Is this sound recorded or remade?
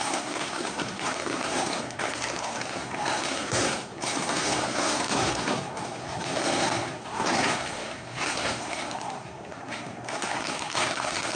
remade